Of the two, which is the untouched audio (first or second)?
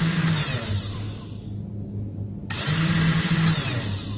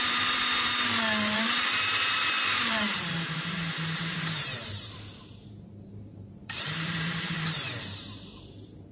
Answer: first